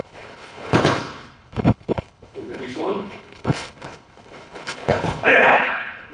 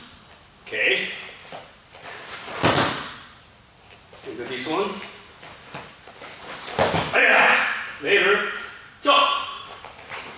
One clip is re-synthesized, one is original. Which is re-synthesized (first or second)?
first